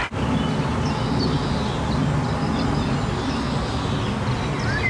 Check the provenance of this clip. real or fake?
real